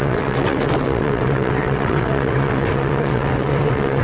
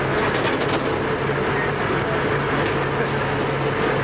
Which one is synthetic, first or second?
first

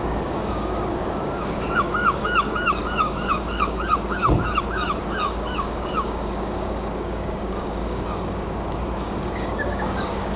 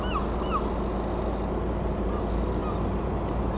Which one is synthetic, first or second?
first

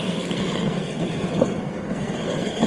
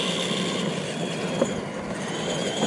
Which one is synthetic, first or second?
first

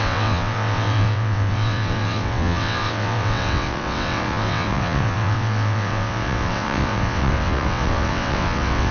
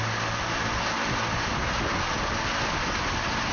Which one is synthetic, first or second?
first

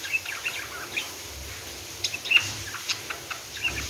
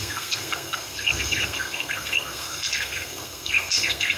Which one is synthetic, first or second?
second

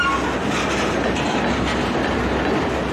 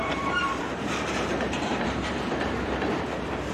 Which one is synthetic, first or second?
second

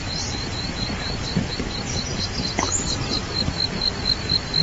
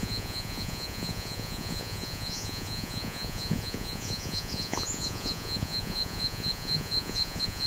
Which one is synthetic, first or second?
second